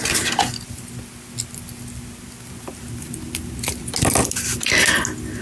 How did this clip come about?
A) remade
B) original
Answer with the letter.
B